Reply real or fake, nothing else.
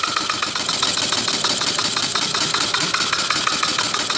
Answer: real